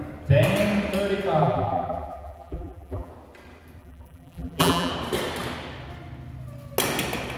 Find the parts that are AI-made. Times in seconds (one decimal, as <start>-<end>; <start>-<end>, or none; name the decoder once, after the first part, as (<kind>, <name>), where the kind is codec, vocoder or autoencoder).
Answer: 1.4-3.1 (vocoder, BigVGAN v2); 3.8-4.9